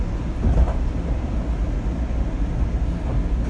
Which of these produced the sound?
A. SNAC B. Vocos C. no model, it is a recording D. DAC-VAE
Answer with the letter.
C